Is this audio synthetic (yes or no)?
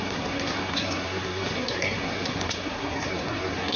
yes